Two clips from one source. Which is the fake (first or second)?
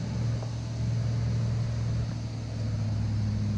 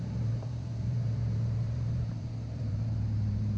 second